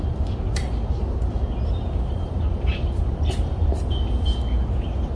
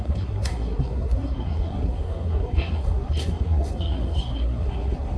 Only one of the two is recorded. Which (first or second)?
first